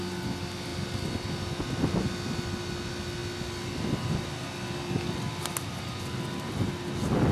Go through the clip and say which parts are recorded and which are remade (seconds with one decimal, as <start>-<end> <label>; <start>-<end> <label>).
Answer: 0.0-7.3 recorded